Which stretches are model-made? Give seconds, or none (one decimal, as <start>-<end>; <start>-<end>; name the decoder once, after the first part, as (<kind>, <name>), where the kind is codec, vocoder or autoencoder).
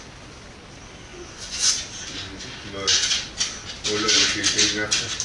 1.1-1.7 (vocoder, Vocos)